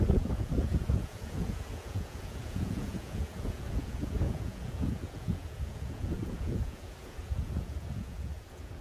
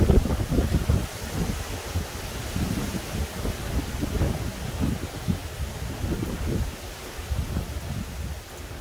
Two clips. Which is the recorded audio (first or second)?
second